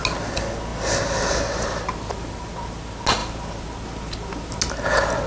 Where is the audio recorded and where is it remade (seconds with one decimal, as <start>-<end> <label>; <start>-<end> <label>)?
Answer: 0.0-5.3 recorded